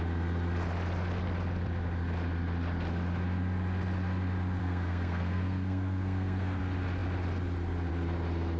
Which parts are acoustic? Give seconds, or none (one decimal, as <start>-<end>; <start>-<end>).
0.0-4.6; 6.6-8.6